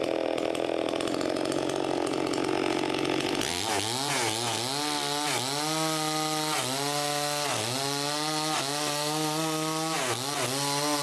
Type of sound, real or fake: real